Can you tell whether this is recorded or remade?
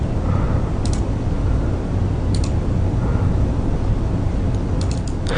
remade